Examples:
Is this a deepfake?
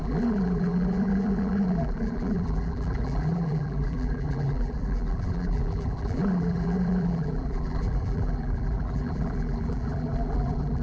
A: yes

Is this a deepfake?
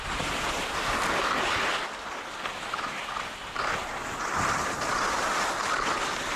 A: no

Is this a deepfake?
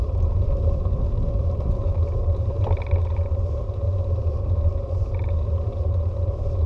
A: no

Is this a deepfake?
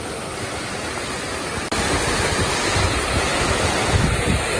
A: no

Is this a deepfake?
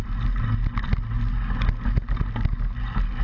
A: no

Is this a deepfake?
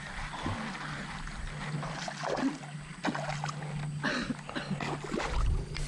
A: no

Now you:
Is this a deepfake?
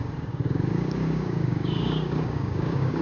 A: yes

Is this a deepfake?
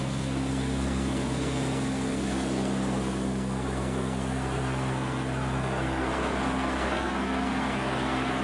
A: yes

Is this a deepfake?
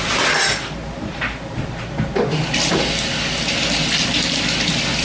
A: no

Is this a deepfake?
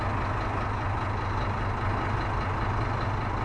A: no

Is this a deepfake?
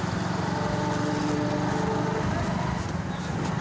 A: no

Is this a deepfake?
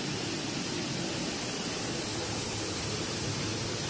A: no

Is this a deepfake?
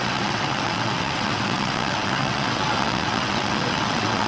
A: yes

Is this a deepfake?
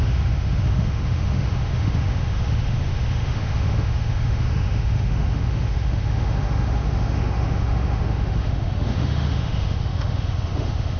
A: yes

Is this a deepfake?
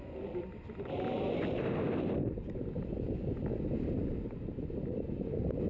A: no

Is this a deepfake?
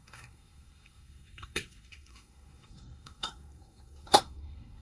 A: yes